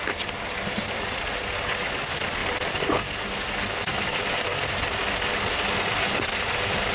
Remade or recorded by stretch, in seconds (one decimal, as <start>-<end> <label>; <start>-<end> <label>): 0.0-2.4 recorded; 2.4-2.9 remade; 2.9-3.9 recorded; 3.9-5.0 remade; 5.0-6.9 recorded